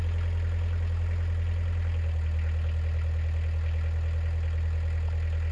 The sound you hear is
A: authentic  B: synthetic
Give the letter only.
A